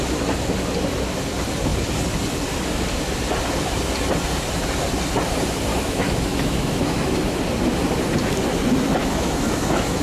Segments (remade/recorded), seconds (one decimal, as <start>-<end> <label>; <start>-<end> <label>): 0.0-5.7 recorded; 5.7-7.4 remade; 7.4-9.0 recorded; 9.0-10.0 remade